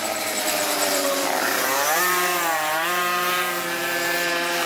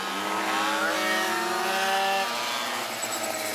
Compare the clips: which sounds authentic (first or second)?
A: second